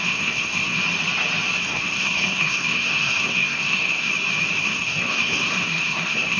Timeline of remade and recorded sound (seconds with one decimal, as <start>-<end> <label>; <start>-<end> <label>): 0.0-0.8 remade; 0.8-1.6 recorded; 1.6-4.1 remade; 4.1-4.6 recorded; 4.6-6.4 remade